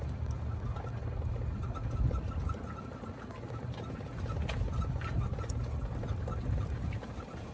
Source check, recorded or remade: recorded